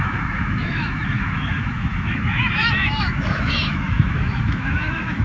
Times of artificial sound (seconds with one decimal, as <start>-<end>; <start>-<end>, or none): 0.0-5.2